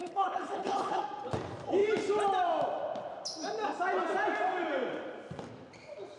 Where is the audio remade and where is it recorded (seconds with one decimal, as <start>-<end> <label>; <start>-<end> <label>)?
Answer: 0.0-1.0 remade; 1.0-6.2 recorded